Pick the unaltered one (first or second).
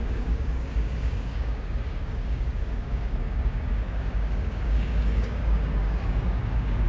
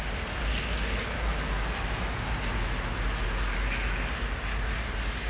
second